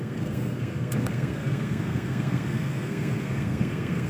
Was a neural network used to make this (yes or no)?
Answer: yes